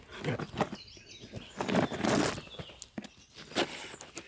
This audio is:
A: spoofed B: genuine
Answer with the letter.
B